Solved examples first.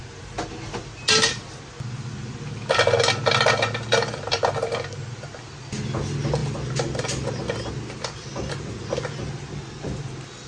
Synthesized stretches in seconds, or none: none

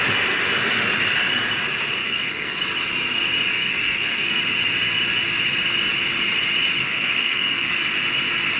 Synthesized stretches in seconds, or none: 2.0-2.6 (codec, SNAC); 3.6-4.4; 6.8-7.7

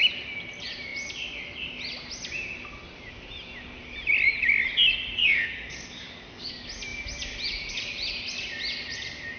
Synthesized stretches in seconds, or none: 5.2-6.5 (codec, DAC)

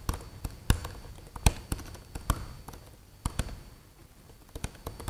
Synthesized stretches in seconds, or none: none

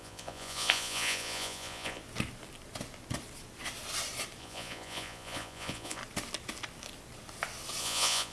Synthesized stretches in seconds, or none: 0.0-2.0 (vocoder, Vocos); 4.4-6.0; 7.8-8.3